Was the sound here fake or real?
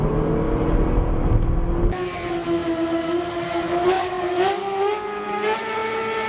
real